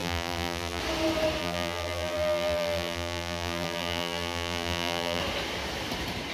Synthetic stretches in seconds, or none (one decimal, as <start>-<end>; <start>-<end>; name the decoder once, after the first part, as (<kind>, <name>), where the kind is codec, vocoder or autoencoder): 0.0-0.8 (vocoder, BigVGAN v2); 1.4-5.2